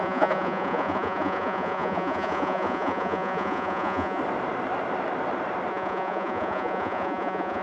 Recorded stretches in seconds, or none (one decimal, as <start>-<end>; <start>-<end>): 4.2-5.7